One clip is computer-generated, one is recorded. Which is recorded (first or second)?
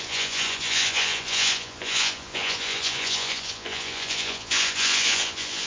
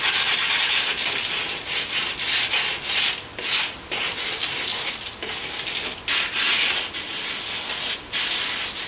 second